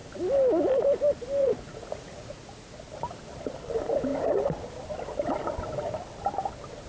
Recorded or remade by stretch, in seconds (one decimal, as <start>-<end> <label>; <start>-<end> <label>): 0.0-1.4 recorded; 1.4-2.8 remade; 2.8-6.9 recorded